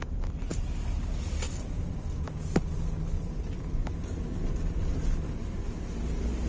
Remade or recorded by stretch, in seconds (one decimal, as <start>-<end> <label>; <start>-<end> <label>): 0.0-6.5 recorded